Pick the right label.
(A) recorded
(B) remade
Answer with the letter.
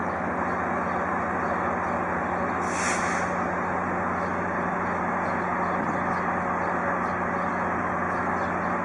A